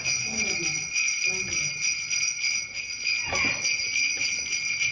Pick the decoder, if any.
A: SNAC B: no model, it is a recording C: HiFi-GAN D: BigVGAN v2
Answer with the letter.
B